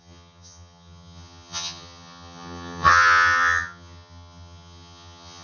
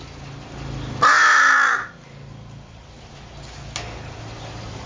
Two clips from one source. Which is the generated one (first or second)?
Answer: first